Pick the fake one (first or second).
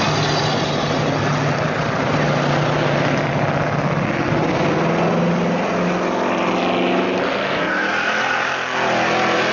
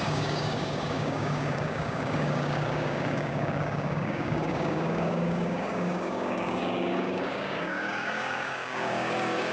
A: second